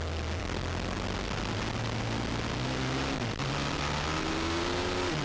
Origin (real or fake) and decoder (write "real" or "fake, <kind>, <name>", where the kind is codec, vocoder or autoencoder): real